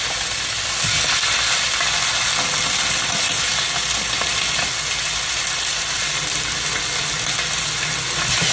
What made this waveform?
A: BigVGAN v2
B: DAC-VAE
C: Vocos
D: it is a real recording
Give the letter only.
D